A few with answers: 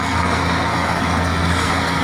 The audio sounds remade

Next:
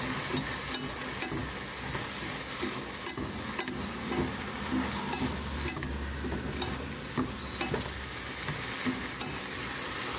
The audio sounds recorded